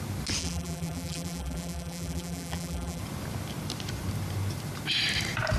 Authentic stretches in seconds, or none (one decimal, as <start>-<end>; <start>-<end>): 0.0-0.4; 3.0-5.6